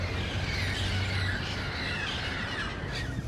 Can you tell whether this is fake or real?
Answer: real